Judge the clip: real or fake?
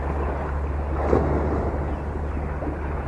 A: real